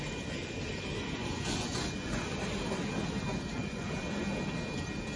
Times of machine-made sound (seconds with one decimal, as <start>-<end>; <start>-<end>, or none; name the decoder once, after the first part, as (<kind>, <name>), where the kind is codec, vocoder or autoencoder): 1.2-2.4 (vocoder, Vocos); 3.3-3.9